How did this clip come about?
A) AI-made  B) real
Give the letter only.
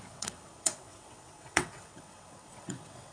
A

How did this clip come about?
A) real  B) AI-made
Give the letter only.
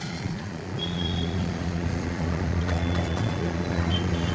B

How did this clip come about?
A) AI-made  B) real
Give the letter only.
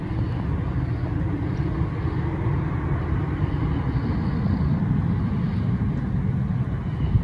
B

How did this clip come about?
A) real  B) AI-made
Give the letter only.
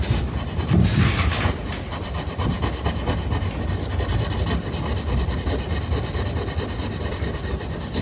A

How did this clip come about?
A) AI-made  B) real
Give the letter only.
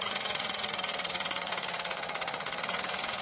A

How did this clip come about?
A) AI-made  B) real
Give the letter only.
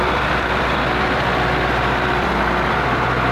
A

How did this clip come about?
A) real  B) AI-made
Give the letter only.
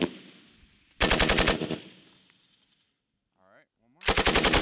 A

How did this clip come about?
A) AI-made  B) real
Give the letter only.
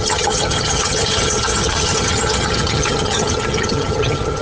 A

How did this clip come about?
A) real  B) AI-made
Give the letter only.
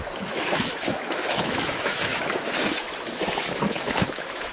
B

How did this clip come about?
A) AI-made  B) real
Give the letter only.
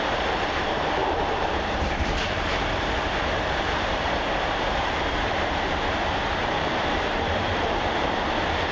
A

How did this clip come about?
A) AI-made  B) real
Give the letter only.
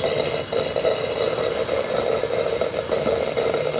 B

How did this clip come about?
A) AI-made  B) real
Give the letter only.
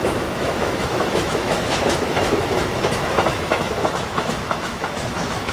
A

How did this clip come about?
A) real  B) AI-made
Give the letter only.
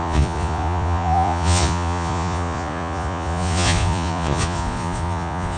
B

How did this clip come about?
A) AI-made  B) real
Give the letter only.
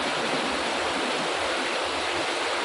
A